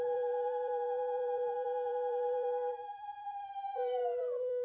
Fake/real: fake